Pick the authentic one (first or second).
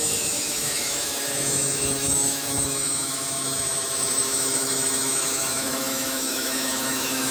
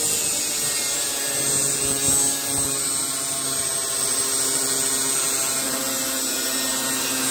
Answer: second